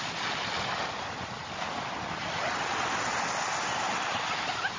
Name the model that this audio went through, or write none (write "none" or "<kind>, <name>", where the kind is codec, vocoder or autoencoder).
none